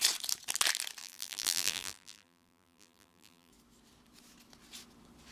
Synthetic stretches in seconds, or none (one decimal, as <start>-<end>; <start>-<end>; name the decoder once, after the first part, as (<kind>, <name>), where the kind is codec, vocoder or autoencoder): 1.0-3.5 (vocoder, BigVGAN v2)